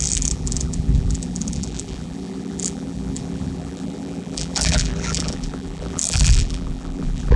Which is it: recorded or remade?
remade